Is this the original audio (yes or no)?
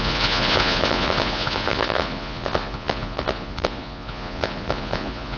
no